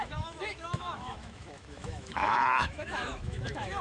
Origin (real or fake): fake